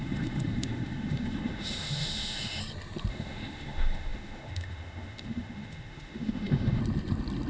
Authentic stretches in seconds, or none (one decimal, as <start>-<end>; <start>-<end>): 2.6-3.1; 6.8-7.5

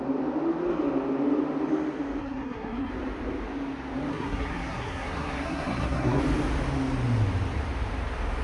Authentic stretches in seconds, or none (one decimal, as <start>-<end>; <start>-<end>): 0.0-2.2; 2.9-4.1; 6.2-8.4